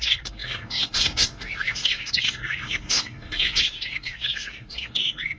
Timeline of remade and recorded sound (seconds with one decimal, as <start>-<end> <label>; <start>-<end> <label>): 0.0-5.4 remade